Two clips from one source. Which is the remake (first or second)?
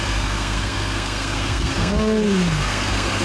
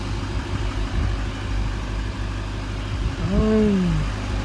first